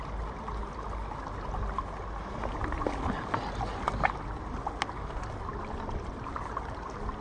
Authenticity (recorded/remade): recorded